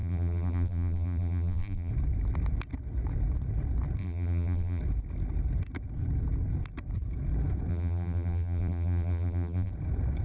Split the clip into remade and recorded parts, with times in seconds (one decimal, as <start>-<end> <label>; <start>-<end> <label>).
0.0-1.9 remade; 1.9-4.0 recorded; 4.0-4.8 remade; 4.8-7.7 recorded; 7.7-9.7 remade; 9.7-10.2 recorded